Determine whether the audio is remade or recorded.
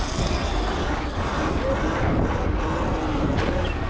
recorded